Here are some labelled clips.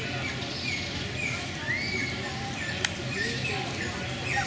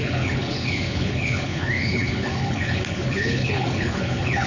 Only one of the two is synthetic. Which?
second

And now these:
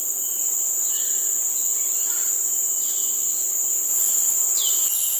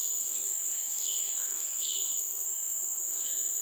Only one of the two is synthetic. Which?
second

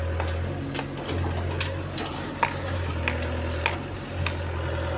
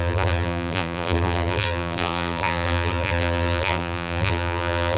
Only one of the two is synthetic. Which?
second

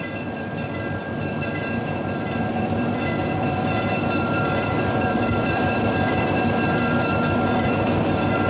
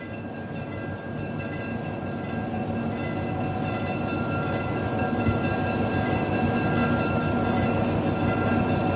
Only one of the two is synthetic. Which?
first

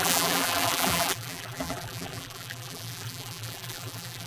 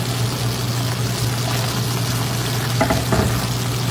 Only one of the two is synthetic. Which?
first